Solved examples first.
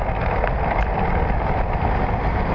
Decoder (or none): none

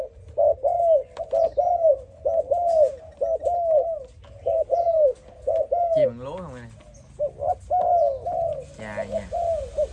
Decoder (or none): none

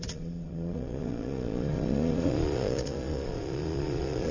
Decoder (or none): vocoder, Vocos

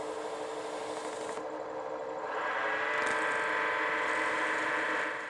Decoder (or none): none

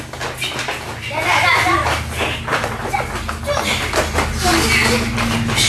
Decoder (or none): none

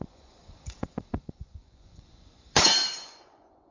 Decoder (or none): vocoder, Vocos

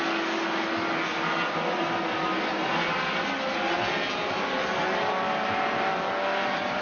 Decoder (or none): none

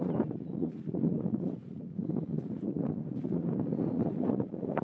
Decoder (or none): vocoder, Vocos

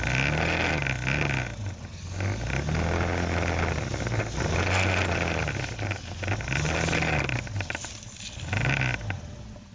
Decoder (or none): none